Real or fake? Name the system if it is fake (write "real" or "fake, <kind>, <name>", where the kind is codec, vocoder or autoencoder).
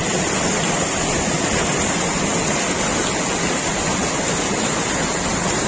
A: real